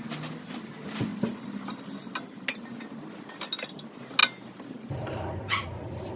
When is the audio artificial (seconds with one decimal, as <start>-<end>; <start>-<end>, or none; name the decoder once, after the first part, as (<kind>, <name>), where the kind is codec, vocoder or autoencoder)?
none